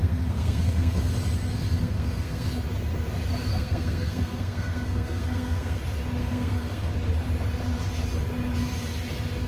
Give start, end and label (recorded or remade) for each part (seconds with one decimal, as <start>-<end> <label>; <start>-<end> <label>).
0.0-1.1 remade; 1.1-1.8 recorded; 1.8-2.5 remade; 2.5-3.5 recorded; 3.5-5.8 remade; 5.8-6.2 recorded; 6.2-6.9 remade; 6.9-9.5 recorded